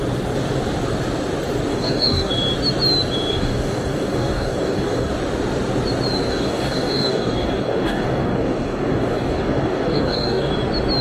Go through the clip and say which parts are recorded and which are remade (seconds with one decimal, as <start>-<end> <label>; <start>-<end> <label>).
0.0-1.7 recorded; 1.7-2.3 remade; 2.3-3.3 recorded; 3.3-5.1 remade; 5.1-6.3 recorded; 6.3-10.5 remade; 10.5-11.0 recorded